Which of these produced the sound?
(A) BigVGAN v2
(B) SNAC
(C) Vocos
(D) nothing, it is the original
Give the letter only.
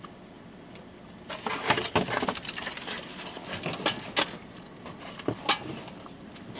D